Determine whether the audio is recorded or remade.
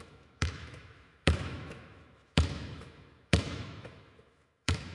remade